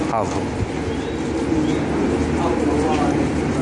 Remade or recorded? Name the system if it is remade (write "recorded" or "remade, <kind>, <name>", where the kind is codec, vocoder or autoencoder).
recorded